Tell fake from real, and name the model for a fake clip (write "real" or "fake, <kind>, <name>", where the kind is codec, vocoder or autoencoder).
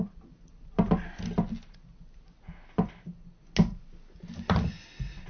real